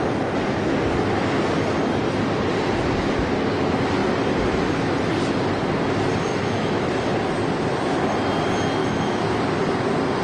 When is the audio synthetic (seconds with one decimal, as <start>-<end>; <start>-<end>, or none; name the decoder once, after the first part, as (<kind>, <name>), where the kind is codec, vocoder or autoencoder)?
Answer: 6.3-6.9 (autoencoder, DAC-VAE); 8.8-9.4